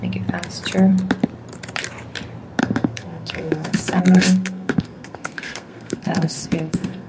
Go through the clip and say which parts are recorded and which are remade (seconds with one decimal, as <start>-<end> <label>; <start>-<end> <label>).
0.0-2.6 recorded; 2.6-7.1 remade